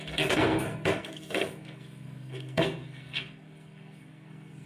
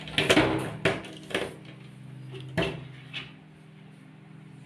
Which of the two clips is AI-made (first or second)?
first